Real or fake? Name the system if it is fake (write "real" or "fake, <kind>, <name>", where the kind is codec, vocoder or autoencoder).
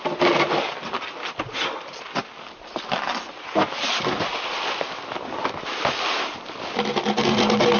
real